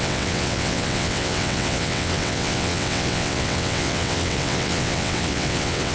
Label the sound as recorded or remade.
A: remade